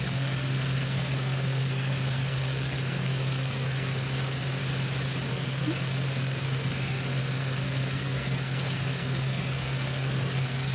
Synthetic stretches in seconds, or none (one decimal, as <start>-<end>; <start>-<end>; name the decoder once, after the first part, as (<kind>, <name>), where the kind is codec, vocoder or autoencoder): 0.0-4.6 (codec, SNAC); 5.3-10.7